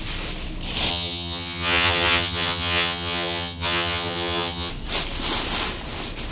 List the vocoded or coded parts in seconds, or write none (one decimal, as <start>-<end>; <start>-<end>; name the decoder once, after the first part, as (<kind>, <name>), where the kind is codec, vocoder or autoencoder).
0.9-4.7 (vocoder, HiFi-GAN)